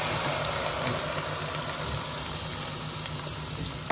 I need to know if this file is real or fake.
real